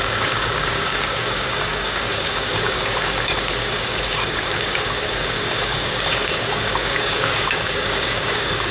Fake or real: fake